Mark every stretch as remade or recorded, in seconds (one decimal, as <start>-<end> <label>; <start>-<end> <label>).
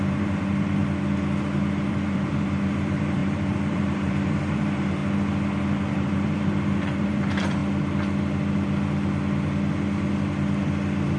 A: 0.0-0.8 remade; 0.8-1.9 recorded; 1.9-5.0 remade; 5.0-5.9 recorded; 5.9-7.6 remade; 7.6-11.2 recorded